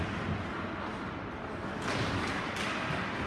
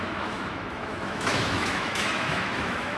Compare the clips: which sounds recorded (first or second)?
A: first